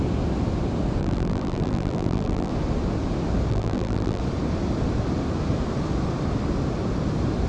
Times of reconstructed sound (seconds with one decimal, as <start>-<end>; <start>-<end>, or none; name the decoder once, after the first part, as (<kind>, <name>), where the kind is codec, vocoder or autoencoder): 1.0-2.5 (vocoder, BigVGAN v2); 3.5-4.2